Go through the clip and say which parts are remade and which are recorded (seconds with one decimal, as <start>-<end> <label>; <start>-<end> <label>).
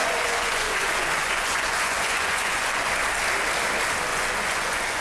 0.0-3.0 remade; 3.0-4.1 recorded; 4.1-5.0 remade